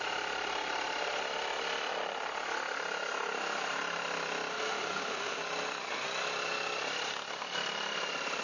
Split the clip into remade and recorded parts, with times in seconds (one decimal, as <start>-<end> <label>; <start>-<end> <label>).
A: 0.0-4.5 recorded; 4.5-5.4 remade; 5.4-8.4 recorded